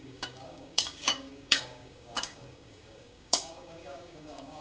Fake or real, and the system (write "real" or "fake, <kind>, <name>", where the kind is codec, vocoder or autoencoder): fake, codec, DAC